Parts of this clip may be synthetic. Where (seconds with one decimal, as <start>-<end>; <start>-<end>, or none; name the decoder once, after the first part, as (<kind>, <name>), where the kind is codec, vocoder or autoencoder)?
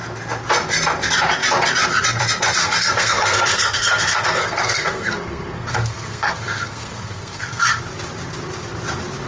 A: 2.6-7.8 (codec, SNAC)